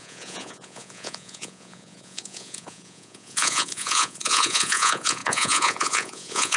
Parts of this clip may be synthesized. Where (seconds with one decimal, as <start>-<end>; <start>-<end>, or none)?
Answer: 0.0-6.6